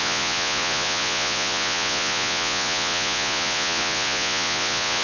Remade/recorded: remade